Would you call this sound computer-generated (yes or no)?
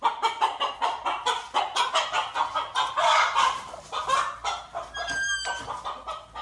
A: no